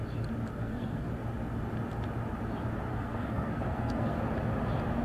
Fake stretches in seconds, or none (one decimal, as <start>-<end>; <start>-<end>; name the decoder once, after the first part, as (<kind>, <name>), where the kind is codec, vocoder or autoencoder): 0.5-1.1 (codec, SNAC); 2.9-4.2